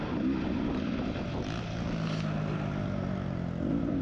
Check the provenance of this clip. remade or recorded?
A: recorded